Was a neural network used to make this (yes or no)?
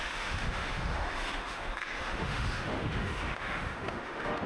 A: yes